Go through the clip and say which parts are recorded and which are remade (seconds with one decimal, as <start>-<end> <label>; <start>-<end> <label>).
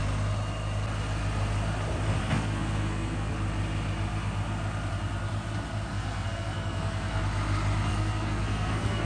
0.0-2.2 recorded; 2.2-3.3 remade; 3.3-5.9 recorded; 5.9-7.2 remade; 7.2-7.9 recorded; 7.9-9.1 remade